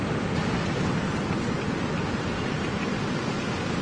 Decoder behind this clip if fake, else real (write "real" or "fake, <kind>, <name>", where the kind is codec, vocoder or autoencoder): real